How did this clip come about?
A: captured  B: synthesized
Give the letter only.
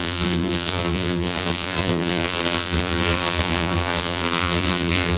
B